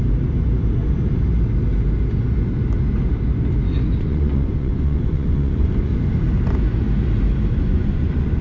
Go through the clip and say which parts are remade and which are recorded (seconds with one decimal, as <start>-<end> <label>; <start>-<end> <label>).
0.0-4.0 recorded; 4.0-5.9 remade; 5.9-7.5 recorded; 7.5-8.4 remade